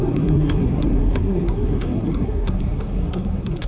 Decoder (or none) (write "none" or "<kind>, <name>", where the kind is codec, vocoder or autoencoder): codec, SNAC